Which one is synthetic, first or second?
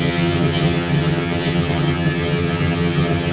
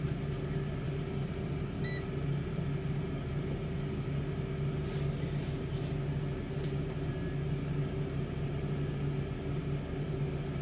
first